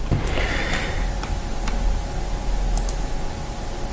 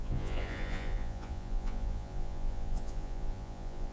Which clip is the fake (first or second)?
second